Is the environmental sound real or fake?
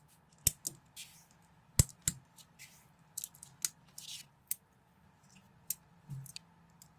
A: real